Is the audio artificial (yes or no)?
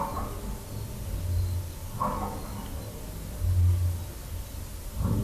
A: no